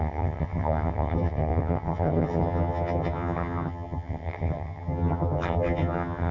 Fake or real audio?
fake